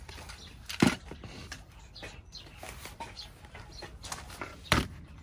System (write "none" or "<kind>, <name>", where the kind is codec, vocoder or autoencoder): none